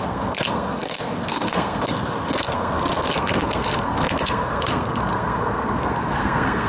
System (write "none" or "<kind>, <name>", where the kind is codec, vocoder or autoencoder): codec, SNAC